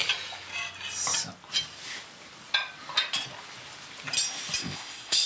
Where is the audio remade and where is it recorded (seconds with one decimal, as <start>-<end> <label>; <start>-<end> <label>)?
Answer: 0.0-4.6 recorded; 4.6-5.3 remade